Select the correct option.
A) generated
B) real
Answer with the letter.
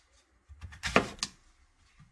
B